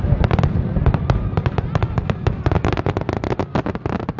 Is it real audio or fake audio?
real